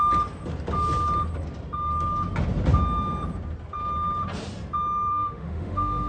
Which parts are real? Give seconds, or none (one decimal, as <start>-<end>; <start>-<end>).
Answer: 0.0-5.1